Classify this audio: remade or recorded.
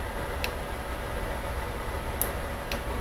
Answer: recorded